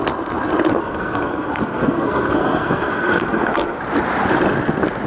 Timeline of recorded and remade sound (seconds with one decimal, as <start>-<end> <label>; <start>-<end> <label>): 0.0-0.7 recorded; 0.7-3.8 remade; 3.8-5.1 recorded